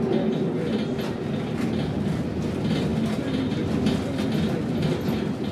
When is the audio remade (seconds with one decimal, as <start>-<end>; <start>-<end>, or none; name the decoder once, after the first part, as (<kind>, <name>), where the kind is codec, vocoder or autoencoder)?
none